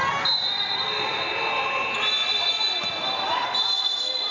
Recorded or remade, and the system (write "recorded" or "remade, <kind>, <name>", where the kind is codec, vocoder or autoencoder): recorded